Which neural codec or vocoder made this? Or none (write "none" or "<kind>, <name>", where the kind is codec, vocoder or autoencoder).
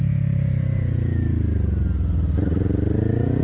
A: none